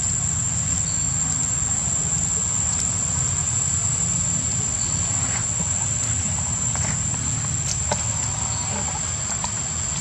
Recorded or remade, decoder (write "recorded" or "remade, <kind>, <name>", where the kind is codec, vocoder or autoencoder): recorded